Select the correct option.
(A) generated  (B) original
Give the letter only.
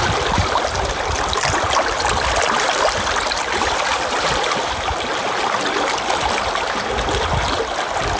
B